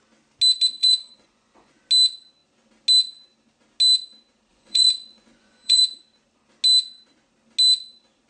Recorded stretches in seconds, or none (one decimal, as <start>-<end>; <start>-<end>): 0.0-0.8; 1.7-4.5; 5.8-8.3